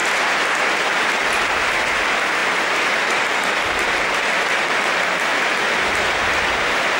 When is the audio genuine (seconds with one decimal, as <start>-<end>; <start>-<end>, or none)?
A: 0.7-2.4; 3.0-7.0